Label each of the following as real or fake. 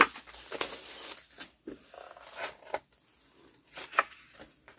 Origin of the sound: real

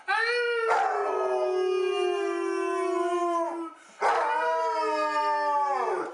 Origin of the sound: real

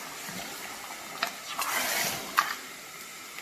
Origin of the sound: real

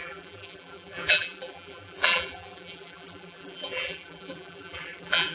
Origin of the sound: fake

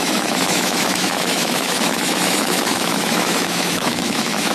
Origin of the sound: fake